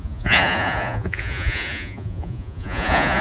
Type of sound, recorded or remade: remade